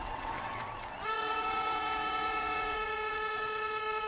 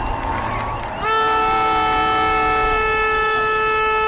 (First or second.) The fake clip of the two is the first